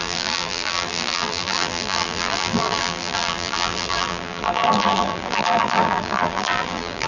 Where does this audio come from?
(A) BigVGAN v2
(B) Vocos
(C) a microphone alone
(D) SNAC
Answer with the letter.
A